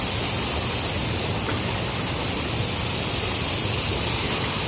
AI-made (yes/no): no